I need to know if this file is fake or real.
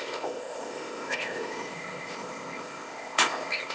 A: fake